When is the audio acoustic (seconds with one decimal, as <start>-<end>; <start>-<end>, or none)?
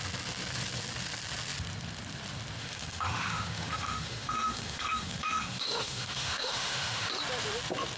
0.0-2.6; 7.1-8.0